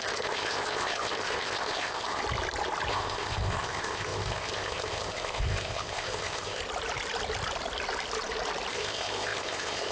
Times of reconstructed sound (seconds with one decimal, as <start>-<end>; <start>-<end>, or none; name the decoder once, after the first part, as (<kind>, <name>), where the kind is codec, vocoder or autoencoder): 0.0-2.2 (codec, ZipCodec); 2.9-6.6; 8.7-9.9